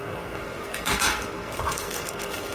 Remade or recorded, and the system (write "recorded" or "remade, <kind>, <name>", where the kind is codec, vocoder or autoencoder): remade, codec, SNAC